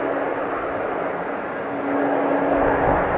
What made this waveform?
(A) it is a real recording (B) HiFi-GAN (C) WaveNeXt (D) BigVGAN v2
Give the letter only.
A